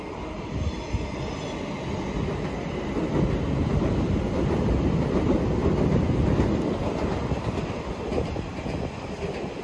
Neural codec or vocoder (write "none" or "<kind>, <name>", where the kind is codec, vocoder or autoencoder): none